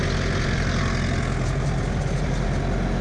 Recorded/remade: recorded